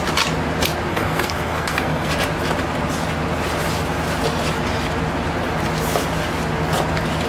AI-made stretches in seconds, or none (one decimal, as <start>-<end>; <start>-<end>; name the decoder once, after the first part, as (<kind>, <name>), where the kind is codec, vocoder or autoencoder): 0.9-2.1 (codec, SNAC)